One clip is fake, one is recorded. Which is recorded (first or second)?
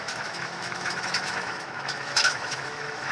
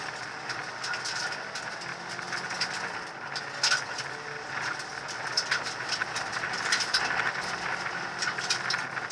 second